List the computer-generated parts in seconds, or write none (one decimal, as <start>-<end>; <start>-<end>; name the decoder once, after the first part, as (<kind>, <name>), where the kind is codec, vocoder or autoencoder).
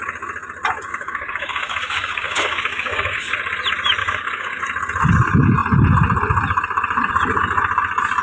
0.9-3.3 (codec, DAC); 4.0-4.6